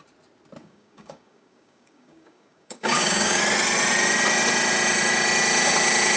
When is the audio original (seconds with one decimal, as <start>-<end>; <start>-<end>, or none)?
0.0-0.6; 3.4-6.2